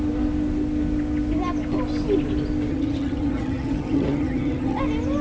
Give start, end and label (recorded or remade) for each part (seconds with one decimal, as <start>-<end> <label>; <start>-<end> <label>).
0.0-2.7 recorded; 2.7-4.8 remade; 4.8-5.2 recorded